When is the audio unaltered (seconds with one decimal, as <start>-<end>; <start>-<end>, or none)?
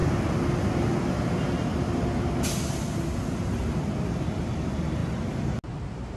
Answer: 0.0-6.2